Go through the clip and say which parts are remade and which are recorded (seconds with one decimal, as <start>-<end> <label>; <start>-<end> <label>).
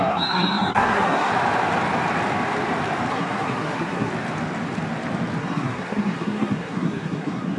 0.0-1.3 remade; 1.3-3.1 recorded; 3.1-4.1 remade; 4.1-5.4 recorded; 5.4-7.6 remade